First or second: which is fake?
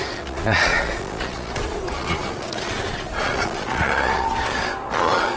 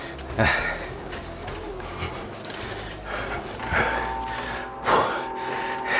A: first